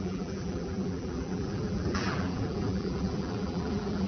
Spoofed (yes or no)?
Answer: yes